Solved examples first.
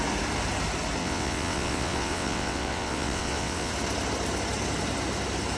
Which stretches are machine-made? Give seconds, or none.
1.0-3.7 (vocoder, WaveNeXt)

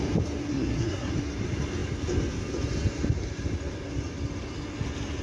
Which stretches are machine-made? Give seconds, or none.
0.5-1.1 (codec, SNAC)

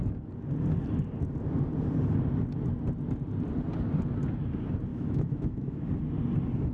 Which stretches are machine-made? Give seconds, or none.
4.9-5.9 (autoencoder, DAC-VAE)